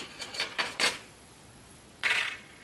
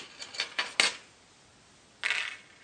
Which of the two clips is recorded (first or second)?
second